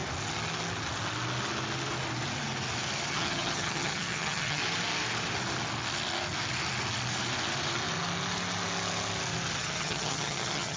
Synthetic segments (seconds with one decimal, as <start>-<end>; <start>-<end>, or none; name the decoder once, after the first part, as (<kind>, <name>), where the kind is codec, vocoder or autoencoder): 3.1-4.6 (vocoder, HiFi-GAN); 9.6-10.8